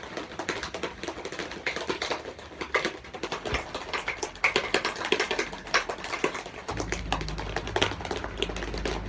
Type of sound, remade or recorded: recorded